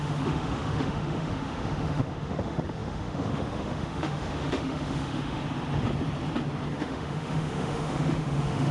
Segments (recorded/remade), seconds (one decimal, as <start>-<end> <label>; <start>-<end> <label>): 0.0-5.4 remade; 5.4-6.7 recorded; 6.7-8.7 remade